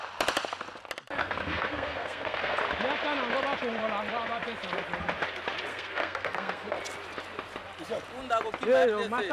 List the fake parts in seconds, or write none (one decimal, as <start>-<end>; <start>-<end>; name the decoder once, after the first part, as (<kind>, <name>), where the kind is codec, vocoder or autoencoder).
1.2-2.6 (codec, SNAC); 5.7-6.8